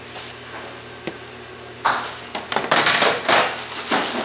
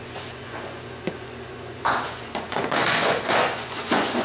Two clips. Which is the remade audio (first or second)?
second